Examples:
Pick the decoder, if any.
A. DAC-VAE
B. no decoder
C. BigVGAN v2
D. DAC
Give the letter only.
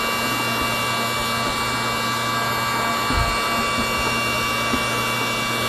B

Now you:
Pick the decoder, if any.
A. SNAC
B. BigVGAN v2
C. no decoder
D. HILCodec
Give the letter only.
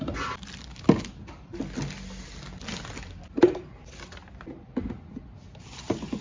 C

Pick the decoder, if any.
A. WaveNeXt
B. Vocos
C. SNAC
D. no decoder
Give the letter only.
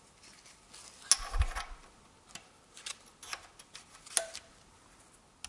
D